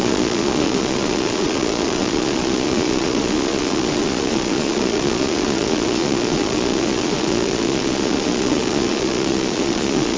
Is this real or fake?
fake